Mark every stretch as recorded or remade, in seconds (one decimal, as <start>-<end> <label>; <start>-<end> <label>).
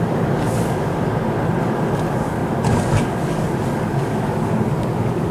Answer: 0.0-0.9 remade; 0.9-1.6 recorded; 1.6-5.3 remade